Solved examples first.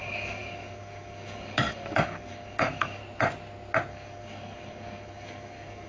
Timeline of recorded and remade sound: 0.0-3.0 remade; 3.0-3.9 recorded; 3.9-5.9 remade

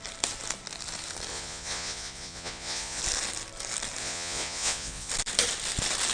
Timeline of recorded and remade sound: 0.0-1.3 recorded; 1.3-3.0 remade; 3.0-4.0 recorded; 4.0-5.1 remade; 5.1-6.1 recorded

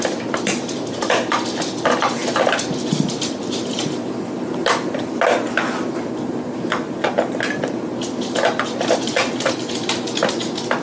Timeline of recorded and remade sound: 0.0-2.2 recorded; 2.2-5.2 remade; 5.2-10.8 recorded

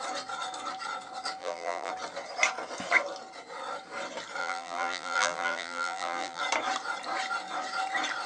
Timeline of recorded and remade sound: 0.0-1.4 recorded; 1.4-1.9 remade; 1.9-4.4 recorded; 4.4-6.4 remade; 6.4-8.3 recorded